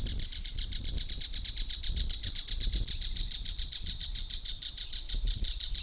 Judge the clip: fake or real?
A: fake